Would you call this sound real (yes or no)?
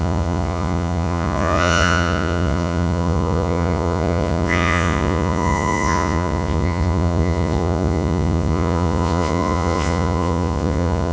no